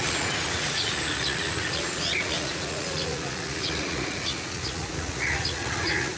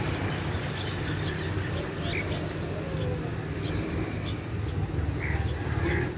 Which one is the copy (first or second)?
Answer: first